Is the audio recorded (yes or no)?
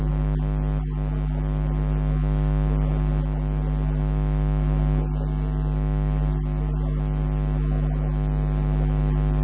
yes